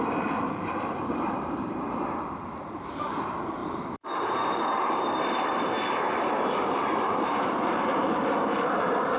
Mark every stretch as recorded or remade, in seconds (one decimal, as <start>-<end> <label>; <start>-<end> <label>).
0.0-9.2 remade